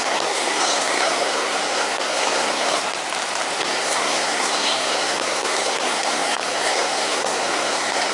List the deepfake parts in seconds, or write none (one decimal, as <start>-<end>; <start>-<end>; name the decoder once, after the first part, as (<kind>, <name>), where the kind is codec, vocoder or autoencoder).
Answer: 0.0-2.8 (codec, SNAC); 3.6-8.1